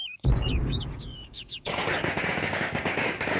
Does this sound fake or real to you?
fake